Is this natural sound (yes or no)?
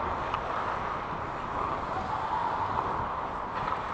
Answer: yes